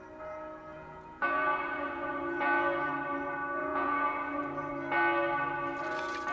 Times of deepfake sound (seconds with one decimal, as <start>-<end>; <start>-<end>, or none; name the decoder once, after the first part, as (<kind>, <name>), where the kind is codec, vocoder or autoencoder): 0.7-2.9 (vocoder, Vocos); 3.6-4.7